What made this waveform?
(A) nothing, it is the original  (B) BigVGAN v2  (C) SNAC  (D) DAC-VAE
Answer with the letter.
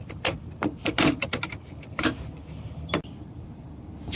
B